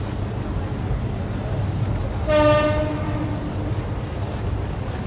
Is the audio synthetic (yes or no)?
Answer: no